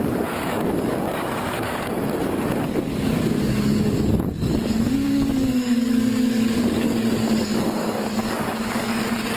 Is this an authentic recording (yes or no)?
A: no